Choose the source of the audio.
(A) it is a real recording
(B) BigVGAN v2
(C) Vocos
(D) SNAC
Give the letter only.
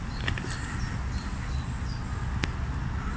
A